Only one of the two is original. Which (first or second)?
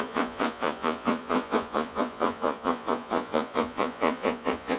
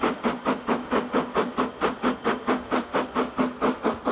second